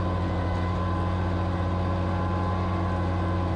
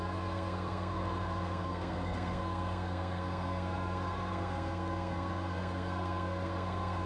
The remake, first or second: second